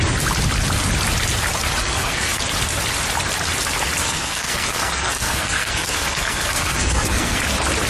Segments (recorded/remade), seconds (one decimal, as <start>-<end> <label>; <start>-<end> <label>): 0.0-1.8 recorded; 1.8-2.4 remade; 2.4-4.0 recorded; 4.0-7.4 remade; 7.4-7.9 recorded